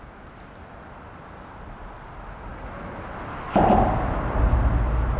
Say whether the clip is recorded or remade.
recorded